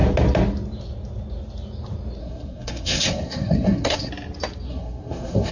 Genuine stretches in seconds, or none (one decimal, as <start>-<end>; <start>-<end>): 0.0-2.2; 4.1-4.7